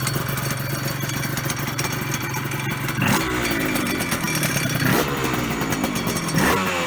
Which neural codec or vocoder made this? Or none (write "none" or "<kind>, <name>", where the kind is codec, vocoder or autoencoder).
none